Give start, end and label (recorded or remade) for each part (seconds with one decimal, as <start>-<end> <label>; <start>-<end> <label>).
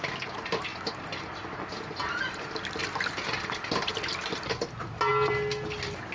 0.0-6.1 recorded